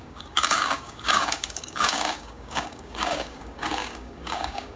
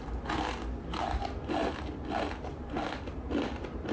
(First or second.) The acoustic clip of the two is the second